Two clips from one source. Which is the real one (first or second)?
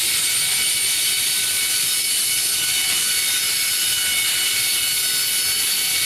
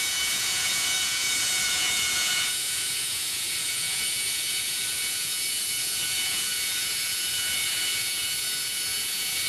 first